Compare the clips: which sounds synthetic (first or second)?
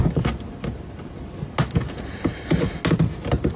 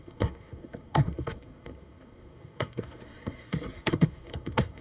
second